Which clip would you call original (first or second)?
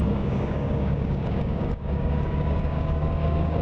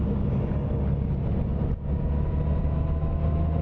second